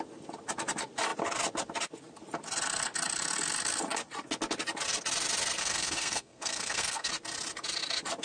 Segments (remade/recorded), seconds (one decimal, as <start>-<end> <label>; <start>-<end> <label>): 0.0-5.6 recorded; 5.6-7.1 remade; 7.1-8.2 recorded

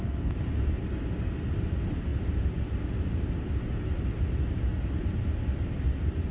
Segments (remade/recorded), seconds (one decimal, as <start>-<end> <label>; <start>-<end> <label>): 0.0-6.3 recorded